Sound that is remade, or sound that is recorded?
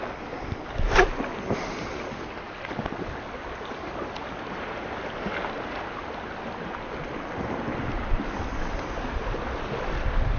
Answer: recorded